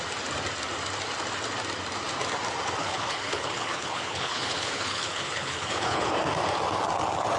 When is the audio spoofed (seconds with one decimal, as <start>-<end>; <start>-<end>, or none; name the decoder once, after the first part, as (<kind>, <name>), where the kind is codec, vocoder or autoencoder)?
2.8-6.1 (codec, HILCodec)